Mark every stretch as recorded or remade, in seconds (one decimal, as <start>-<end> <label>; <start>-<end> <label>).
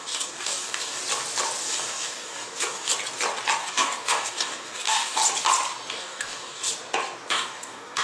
0.0-1.0 remade; 1.0-1.6 recorded; 1.6-2.9 remade; 2.9-3.6 recorded; 3.6-5.2 remade; 5.2-5.9 recorded; 5.9-6.7 remade; 6.7-7.3 recorded; 7.3-8.0 remade